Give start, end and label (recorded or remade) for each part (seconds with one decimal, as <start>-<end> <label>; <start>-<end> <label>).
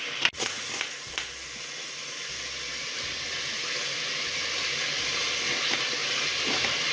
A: 0.0-6.0 recorded; 6.0-6.9 remade